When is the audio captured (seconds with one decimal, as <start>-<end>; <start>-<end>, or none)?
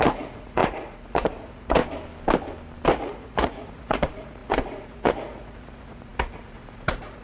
1.8-2.9